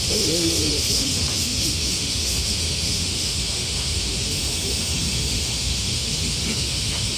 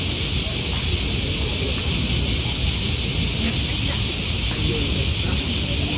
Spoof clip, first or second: first